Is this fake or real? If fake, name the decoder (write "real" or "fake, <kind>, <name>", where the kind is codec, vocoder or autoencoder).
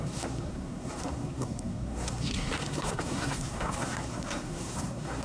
fake, codec, SNAC